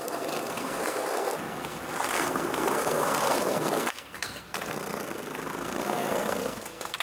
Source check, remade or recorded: remade